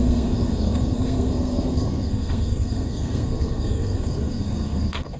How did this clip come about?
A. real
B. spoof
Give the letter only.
B